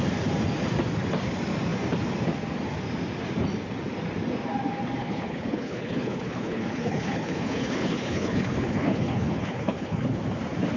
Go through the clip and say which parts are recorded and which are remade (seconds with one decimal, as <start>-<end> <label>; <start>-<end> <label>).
0.0-5.0 recorded; 5.0-10.2 remade; 10.2-10.8 recorded

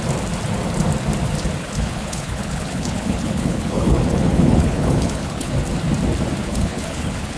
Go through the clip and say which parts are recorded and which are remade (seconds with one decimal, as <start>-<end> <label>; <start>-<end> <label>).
0.0-1.6 recorded; 1.6-5.5 remade; 5.5-6.4 recorded; 6.4-7.4 remade

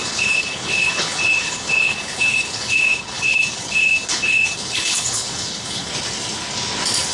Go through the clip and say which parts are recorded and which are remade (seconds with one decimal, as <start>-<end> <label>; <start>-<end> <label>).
0.0-5.9 remade; 5.9-7.1 recorded

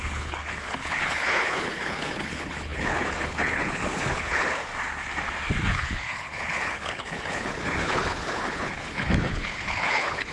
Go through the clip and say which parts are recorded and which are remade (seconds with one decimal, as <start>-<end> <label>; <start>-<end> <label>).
0.0-4.7 remade; 4.7-5.6 recorded; 5.6-10.3 remade

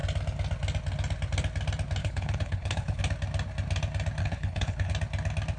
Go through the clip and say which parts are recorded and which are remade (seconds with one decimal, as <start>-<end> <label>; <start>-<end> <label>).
0.0-2.0 recorded; 2.0-3.0 remade; 3.0-4.2 recorded; 4.2-4.9 remade; 4.9-5.6 recorded